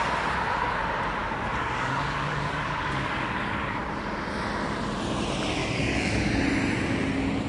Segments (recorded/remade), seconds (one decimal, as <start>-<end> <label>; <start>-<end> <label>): 0.0-1.2 recorded; 1.2-3.8 remade; 3.8-5.6 recorded; 5.6-6.3 remade; 6.3-7.5 recorded